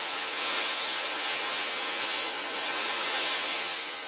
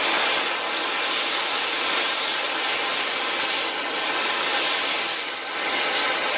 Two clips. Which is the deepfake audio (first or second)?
first